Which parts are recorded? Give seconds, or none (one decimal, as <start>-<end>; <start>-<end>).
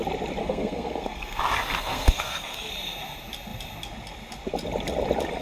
0.0-0.4; 1.4-1.8; 2.7-5.4